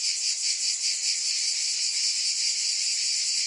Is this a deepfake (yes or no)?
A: no